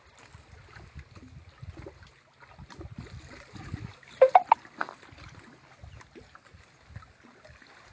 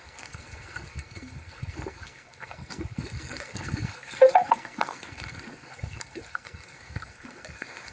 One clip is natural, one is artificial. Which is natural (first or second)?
first